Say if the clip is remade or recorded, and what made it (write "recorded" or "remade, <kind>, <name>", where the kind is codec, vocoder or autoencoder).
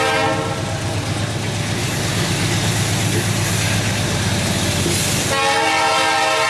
recorded